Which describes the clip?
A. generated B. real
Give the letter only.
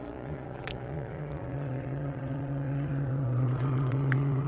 A